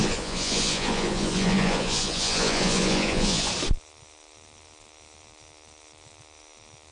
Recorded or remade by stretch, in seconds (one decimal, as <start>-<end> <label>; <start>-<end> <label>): 0.0-3.5 remade; 3.5-6.9 recorded